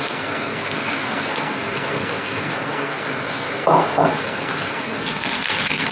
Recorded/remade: remade